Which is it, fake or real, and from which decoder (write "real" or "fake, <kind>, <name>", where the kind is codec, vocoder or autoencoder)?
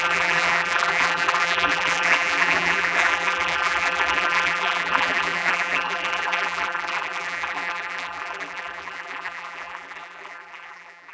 fake, vocoder, BigVGAN v2